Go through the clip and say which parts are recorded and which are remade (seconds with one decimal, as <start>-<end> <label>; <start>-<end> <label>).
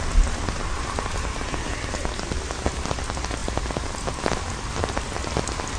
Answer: 0.0-5.8 recorded